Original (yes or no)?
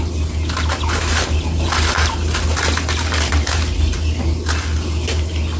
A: yes